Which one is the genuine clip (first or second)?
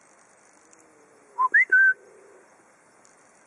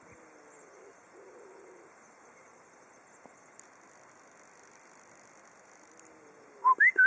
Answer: first